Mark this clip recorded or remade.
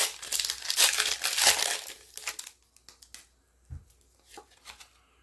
recorded